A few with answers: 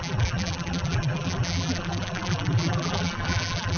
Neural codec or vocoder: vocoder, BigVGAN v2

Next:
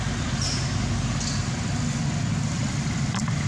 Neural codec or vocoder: none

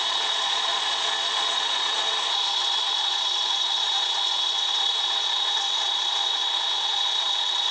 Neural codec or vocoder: vocoder, Vocos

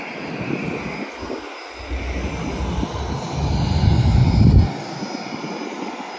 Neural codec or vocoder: none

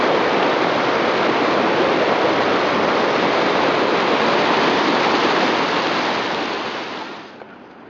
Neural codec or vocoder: none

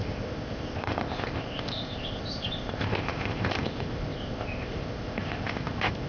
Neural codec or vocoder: codec, ZipCodec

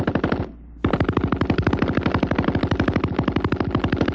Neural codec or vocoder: none